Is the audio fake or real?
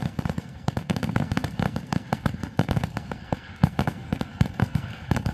fake